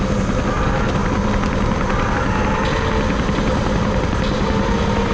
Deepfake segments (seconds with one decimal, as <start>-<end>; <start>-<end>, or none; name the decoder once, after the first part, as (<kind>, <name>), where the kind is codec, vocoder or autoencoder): none